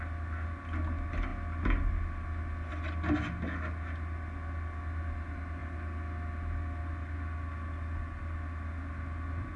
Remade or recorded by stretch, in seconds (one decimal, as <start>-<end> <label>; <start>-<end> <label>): 0.0-9.6 recorded